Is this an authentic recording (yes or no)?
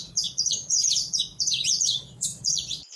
no